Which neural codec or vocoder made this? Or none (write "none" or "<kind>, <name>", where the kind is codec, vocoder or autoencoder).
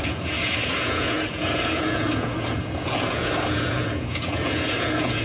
vocoder, Vocos